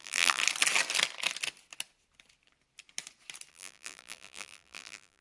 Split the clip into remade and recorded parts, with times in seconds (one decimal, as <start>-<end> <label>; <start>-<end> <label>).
0.0-0.4 remade; 0.4-3.5 recorded; 3.5-5.2 remade